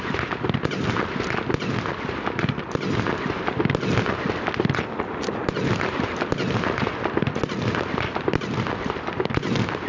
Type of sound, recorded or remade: recorded